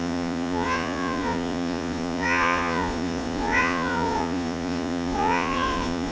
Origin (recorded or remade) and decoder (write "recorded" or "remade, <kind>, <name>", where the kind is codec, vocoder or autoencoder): remade, vocoder, Vocos